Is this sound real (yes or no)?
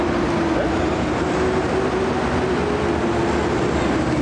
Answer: yes